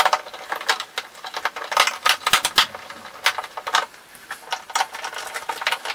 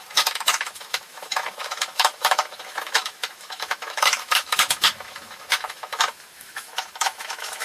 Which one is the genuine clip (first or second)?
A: first